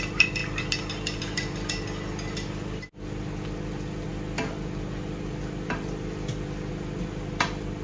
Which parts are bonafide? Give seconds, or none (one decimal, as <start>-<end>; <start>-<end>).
0.0-7.8